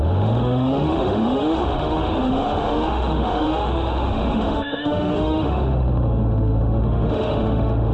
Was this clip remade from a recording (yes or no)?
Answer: yes